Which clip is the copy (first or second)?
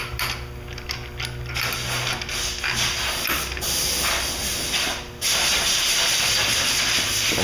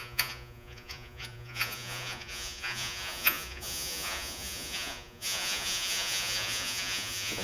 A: second